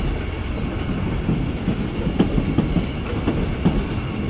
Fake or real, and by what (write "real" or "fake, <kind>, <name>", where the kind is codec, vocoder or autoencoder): real